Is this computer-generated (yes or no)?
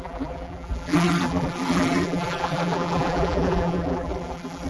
yes